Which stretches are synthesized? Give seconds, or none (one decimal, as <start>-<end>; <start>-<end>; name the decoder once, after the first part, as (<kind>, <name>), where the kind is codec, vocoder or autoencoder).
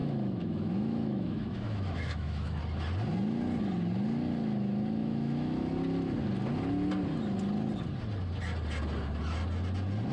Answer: 0.0-2.6 (autoencoder, DAC-VAE); 5.0-5.7